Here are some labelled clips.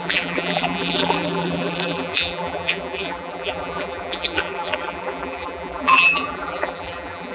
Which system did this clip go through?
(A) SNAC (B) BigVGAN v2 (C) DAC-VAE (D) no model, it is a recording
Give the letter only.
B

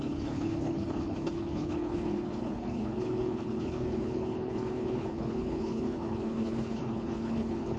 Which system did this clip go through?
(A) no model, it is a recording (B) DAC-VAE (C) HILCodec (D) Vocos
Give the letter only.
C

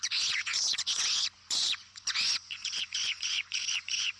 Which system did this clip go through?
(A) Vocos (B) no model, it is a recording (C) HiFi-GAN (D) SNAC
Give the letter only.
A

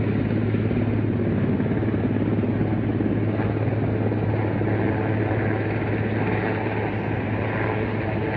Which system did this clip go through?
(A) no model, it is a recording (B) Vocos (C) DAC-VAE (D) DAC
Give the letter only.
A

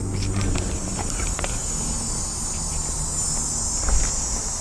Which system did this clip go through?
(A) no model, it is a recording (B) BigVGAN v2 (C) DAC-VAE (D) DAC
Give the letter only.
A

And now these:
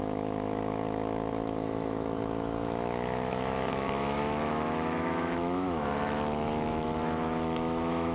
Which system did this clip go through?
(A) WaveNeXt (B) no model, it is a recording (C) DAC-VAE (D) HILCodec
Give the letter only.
C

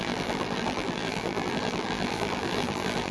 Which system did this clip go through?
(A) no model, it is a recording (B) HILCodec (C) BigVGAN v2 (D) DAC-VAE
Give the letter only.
C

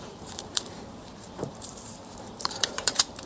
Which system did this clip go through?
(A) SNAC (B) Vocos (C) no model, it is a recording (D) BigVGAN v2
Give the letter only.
D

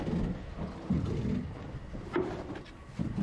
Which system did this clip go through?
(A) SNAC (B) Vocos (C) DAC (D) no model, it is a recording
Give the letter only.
D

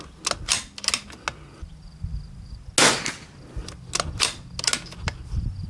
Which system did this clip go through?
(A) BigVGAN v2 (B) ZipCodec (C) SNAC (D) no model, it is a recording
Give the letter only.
D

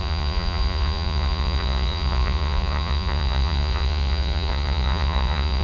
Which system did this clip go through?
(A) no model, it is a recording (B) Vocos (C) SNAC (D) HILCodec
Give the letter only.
B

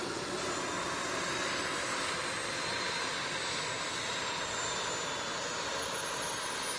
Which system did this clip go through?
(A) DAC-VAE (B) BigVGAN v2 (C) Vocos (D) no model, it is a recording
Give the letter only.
D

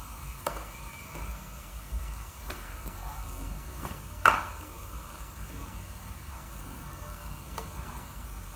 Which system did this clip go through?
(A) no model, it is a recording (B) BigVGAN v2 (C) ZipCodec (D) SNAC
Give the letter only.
D